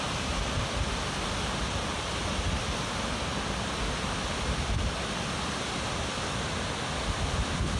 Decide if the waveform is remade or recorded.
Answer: recorded